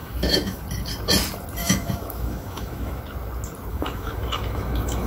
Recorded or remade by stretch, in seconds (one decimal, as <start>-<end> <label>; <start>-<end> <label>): 0.0-0.6 remade; 0.6-1.6 recorded; 1.6-3.0 remade; 3.0-3.7 recorded; 3.7-5.1 remade